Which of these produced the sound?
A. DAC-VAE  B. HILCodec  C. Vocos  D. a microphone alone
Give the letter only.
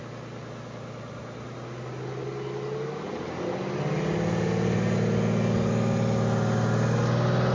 D